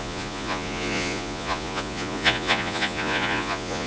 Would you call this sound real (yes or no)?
no